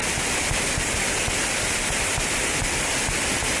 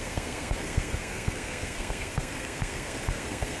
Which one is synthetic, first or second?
second